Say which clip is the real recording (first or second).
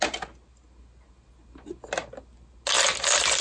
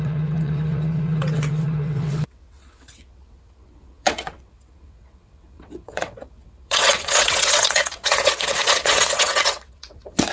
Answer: first